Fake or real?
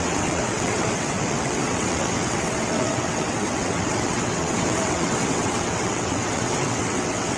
fake